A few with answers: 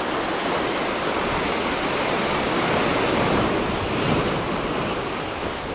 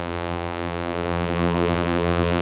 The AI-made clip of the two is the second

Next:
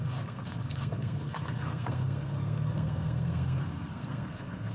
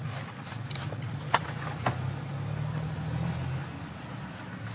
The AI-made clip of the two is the first